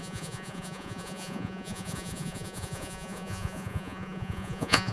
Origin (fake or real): fake